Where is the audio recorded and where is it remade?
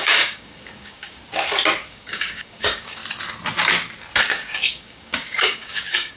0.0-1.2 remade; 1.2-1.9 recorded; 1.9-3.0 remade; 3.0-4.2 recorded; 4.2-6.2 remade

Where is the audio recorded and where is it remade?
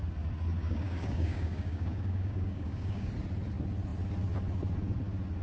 0.0-0.6 recorded; 0.6-3.1 remade; 3.1-5.4 recorded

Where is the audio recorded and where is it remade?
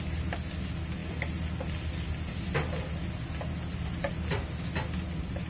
0.0-5.5 recorded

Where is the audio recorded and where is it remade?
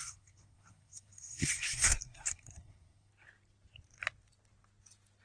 0.0-3.1 remade; 3.1-5.2 recorded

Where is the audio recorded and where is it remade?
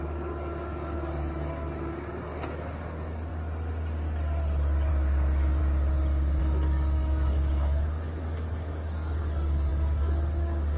0.0-3.3 remade; 3.3-4.9 recorded; 4.9-5.6 remade; 5.6-6.4 recorded; 6.4-10.8 remade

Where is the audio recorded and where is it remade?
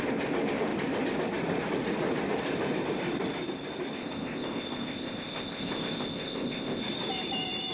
0.0-4.0 recorded; 4.0-6.8 remade; 6.8-7.7 recorded